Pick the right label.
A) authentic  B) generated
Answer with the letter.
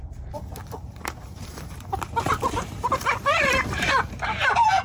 B